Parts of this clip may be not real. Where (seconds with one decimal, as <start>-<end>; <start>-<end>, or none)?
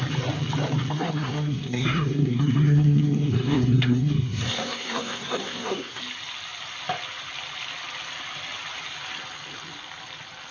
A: 0.9-6.0